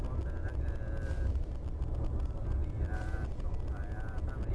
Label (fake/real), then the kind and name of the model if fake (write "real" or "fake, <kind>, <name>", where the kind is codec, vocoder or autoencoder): real